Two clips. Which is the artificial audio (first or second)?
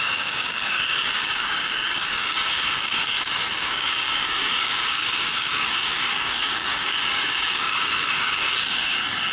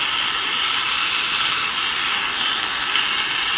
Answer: first